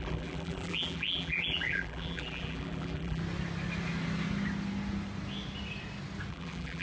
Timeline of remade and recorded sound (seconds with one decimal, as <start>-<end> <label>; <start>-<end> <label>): 0.0-3.2 remade; 3.2-6.3 recorded; 6.3-6.8 remade